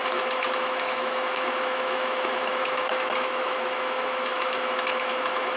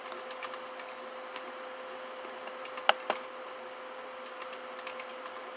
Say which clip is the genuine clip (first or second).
second